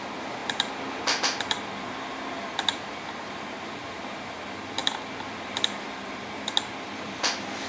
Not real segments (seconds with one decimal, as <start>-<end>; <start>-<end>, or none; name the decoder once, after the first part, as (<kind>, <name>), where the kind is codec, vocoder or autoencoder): 0.4-3.4 (vocoder, BigVGAN v2); 4.8-6.5